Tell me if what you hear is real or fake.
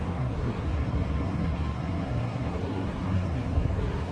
fake